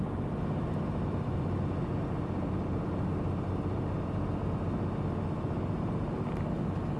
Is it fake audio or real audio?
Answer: real